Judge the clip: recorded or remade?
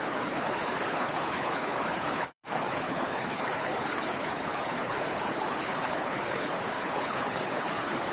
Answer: remade